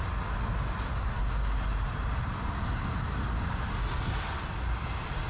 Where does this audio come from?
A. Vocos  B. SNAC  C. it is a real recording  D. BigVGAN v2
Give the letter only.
C